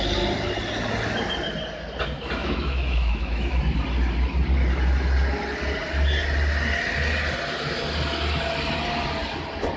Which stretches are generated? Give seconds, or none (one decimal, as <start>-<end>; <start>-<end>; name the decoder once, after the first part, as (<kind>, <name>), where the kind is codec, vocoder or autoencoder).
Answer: 2.4-3.6 (autoencoder, DAC-VAE)